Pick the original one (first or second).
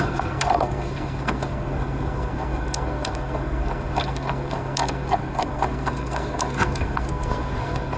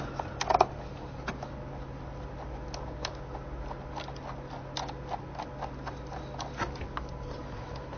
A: second